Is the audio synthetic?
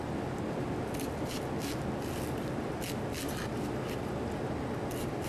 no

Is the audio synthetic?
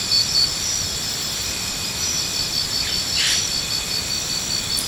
no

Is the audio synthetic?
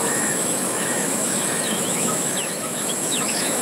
yes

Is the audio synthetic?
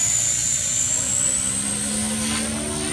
no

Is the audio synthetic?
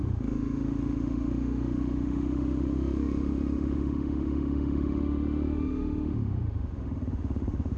yes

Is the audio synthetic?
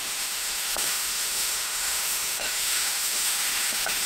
yes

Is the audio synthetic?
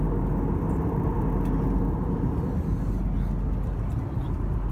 no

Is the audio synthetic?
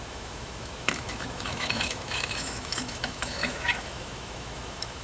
yes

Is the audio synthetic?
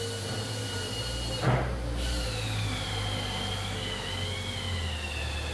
no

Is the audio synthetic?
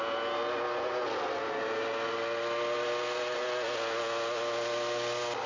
no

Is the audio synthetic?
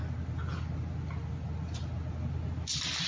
no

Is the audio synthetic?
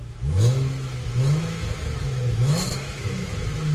yes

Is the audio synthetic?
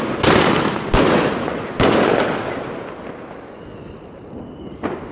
no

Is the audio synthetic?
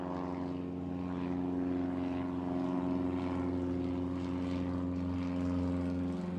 no